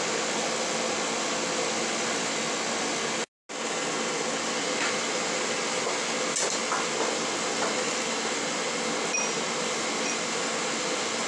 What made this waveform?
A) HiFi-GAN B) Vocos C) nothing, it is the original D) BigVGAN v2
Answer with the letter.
C